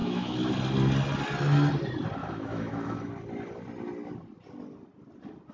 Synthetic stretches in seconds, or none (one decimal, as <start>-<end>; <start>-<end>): 0.0-0.5; 2.2-3.1